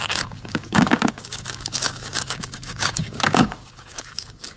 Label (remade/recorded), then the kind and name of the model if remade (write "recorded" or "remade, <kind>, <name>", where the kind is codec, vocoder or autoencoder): remade, codec, DAC